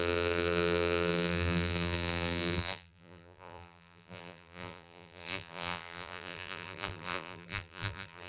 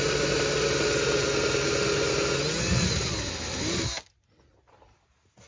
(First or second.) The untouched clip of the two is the second